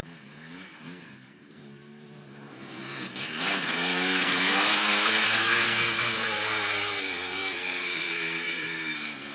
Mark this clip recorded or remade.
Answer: remade